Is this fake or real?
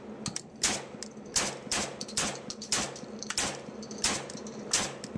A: real